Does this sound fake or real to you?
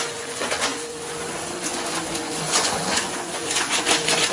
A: fake